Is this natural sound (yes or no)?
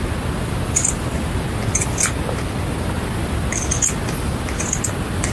yes